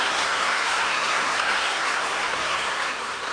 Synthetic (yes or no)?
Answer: yes